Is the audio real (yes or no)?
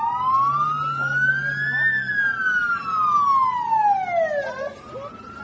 yes